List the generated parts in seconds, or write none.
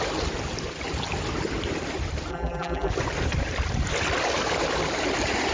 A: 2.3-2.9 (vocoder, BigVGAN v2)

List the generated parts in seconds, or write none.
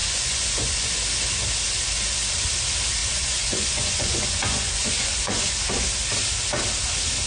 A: 0.0-0.9 (vocoder, Vocos); 3.0-5.5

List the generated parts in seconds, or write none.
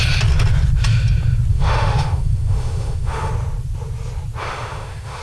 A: 1.5-3.3 (autoencoder, DAC-VAE); 4.4-5.2